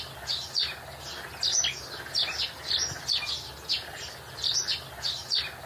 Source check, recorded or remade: recorded